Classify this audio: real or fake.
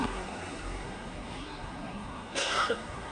fake